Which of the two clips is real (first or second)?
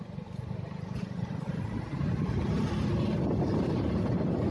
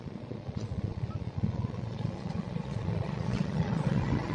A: first